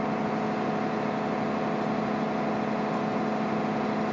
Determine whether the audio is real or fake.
real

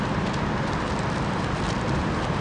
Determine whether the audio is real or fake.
real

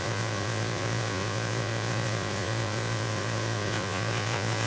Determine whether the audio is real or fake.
fake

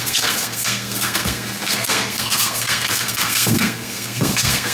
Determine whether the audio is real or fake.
fake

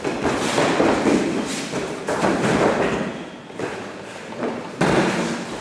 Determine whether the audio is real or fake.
real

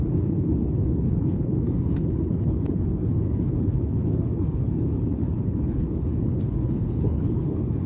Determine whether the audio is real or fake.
fake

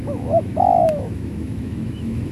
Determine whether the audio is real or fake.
fake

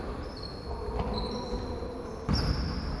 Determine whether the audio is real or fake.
real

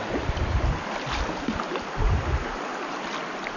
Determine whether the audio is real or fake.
real